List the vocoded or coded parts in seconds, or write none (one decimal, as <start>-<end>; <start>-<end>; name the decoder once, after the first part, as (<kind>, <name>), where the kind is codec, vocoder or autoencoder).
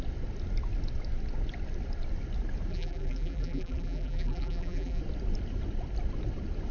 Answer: 2.7-5.0 (vocoder, BigVGAN v2)